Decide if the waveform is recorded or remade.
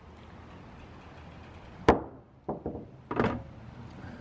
recorded